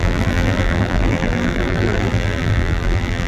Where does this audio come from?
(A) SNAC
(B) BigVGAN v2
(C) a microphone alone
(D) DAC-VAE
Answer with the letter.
B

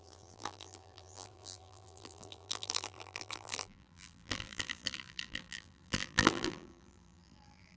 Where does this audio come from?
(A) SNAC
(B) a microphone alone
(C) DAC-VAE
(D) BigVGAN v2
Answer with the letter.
D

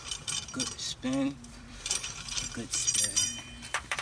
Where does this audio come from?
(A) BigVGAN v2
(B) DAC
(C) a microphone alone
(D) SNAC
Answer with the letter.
A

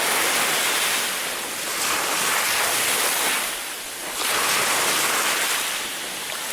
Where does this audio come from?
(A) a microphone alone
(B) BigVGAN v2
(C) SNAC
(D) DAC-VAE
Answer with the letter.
A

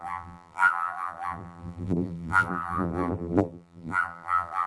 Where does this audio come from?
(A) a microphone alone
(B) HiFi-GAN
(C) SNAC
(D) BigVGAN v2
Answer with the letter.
D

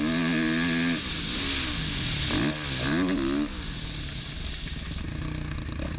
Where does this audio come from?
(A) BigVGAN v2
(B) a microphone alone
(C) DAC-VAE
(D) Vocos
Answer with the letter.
B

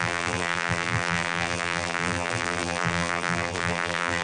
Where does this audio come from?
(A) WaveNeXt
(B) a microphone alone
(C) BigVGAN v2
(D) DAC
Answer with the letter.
C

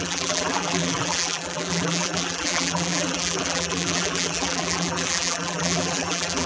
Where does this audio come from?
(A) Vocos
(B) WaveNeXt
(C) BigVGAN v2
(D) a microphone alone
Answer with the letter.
C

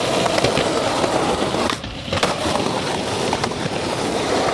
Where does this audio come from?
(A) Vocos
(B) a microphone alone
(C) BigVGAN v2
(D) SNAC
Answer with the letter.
C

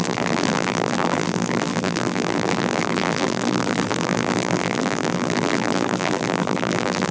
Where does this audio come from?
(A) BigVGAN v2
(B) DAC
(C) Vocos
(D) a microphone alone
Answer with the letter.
A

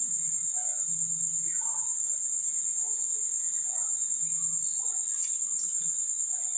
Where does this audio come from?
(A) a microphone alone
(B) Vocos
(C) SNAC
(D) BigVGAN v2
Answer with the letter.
A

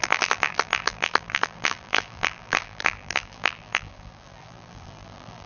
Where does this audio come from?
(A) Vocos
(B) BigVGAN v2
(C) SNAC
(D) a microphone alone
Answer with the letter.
B